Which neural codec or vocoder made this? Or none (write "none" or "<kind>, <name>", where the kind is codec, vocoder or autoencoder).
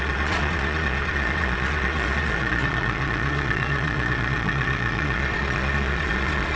vocoder, Vocos